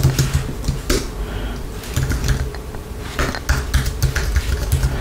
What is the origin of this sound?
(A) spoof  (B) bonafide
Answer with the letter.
B